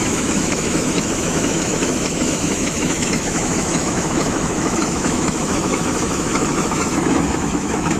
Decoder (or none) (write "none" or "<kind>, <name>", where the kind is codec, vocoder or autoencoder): autoencoder, DAC-VAE